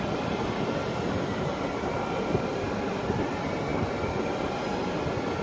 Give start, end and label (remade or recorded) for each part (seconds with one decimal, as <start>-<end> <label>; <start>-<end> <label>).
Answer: 0.0-5.4 recorded